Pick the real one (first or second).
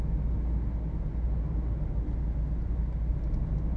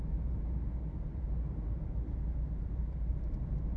first